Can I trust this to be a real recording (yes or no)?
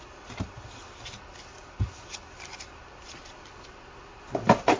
yes